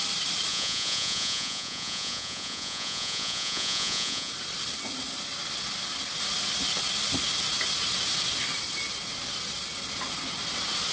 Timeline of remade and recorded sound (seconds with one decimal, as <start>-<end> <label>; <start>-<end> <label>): 0.0-0.5 recorded; 0.5-4.3 remade; 4.3-10.9 recorded